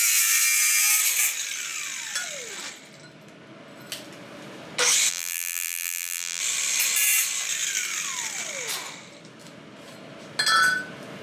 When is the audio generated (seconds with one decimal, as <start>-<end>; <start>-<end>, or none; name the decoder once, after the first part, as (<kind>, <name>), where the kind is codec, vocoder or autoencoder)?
5.1-6.4 (vocoder, BigVGAN v2)